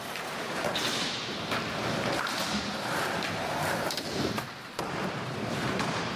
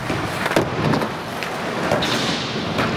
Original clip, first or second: second